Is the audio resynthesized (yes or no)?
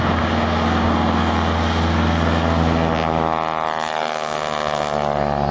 no